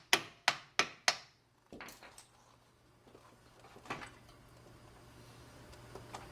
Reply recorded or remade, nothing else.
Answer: recorded